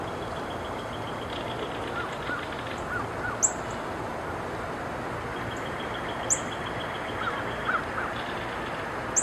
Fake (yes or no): no